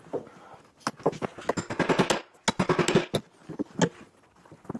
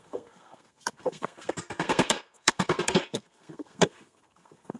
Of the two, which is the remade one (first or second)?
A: second